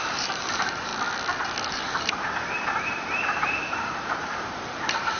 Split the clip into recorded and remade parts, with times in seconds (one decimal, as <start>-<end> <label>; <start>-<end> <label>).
0.0-0.9 remade; 0.9-1.7 recorded; 1.7-5.2 remade